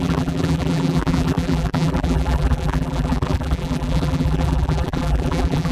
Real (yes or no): no